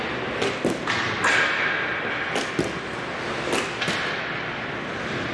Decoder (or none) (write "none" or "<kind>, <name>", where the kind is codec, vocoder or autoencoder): none